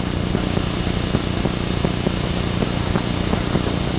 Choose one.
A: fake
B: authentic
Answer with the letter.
B